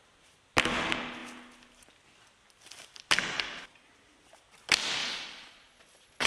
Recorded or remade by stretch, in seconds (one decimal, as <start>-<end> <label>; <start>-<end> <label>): 0.0-5.0 recorded; 5.0-6.3 remade

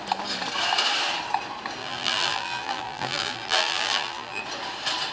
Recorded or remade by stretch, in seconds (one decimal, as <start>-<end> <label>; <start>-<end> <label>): 0.0-1.8 recorded; 1.8-4.4 remade; 4.4-5.1 recorded